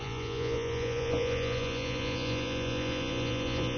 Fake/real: fake